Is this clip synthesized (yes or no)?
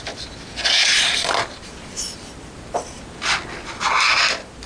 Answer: no